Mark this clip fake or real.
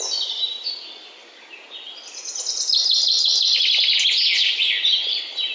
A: real